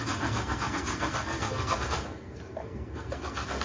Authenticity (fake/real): fake